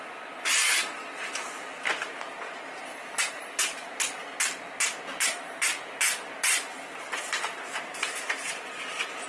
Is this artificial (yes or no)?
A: no